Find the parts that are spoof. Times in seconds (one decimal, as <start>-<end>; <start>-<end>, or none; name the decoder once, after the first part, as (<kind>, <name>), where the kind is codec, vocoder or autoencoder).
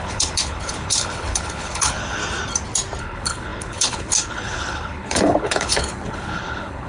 0.0-2.2 (codec, HILCodec); 3.0-6.9